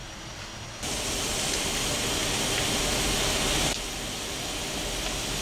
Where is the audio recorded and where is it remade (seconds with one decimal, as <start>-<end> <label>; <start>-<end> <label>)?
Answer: 0.0-1.3 remade; 1.3-5.4 recorded